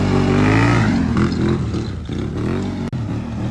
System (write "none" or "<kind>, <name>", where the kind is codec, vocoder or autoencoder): none